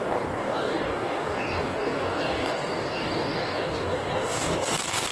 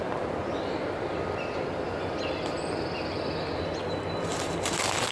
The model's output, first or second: first